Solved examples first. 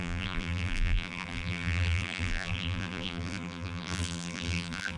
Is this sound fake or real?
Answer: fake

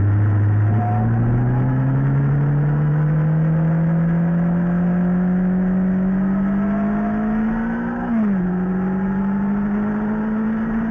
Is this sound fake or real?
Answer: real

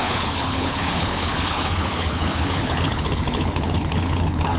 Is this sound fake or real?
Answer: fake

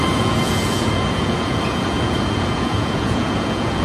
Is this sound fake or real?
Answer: fake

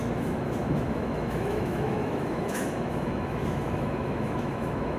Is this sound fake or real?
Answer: fake